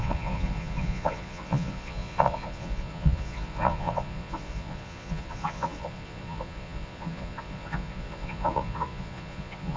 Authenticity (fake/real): fake